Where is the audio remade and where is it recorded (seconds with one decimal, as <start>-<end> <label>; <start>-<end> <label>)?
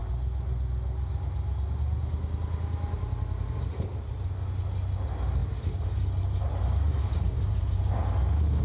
0.0-8.6 recorded